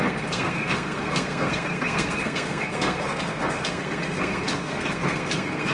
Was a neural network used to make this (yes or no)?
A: yes